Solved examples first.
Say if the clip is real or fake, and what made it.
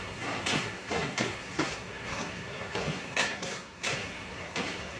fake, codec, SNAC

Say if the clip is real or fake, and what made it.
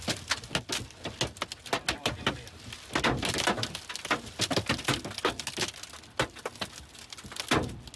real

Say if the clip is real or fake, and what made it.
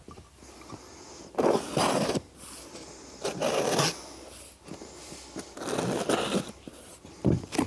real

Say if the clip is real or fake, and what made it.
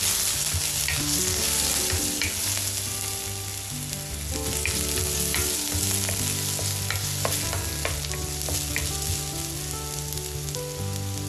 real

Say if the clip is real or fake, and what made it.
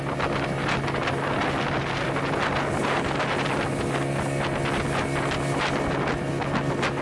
real